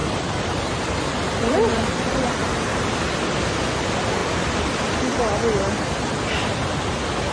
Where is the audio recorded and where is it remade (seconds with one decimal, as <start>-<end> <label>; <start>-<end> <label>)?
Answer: 0.0-1.9 remade; 1.9-4.2 recorded; 4.2-5.0 remade; 5.0-7.3 recorded